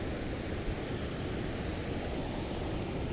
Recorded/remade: recorded